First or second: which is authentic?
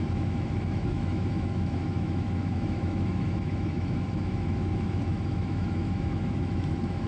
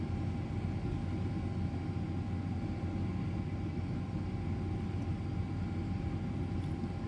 second